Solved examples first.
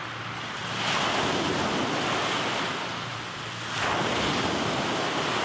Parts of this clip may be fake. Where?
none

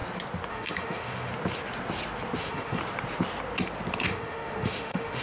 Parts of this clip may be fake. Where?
0.5-1.3 (autoencoder, DAC-VAE); 2.4-2.8; 4.0-5.2

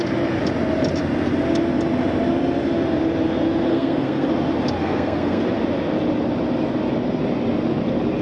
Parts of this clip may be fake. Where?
3.7-4.3 (codec, SNAC); 4.8-5.4

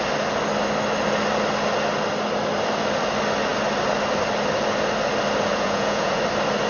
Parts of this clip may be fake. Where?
5.5-6.2 (vocoder, Vocos)

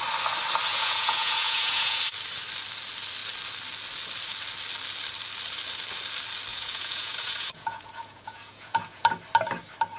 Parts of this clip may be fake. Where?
0.7-2.0 (vocoder, Vocos); 6.5-9.1